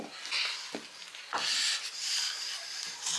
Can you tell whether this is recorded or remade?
recorded